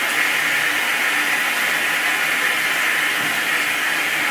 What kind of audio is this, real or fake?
real